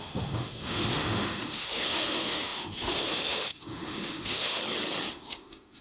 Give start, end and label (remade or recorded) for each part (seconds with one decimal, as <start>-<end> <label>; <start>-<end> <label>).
0.0-4.6 remade; 4.6-5.1 recorded; 5.1-5.8 remade